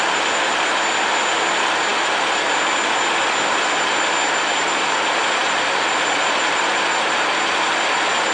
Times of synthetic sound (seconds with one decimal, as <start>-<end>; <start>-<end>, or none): none